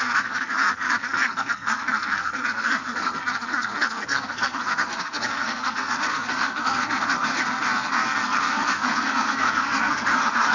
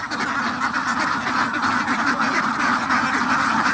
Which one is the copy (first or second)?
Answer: first